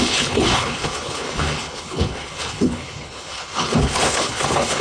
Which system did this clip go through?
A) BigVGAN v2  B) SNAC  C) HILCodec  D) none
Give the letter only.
C